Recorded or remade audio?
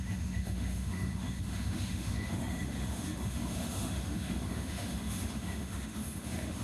remade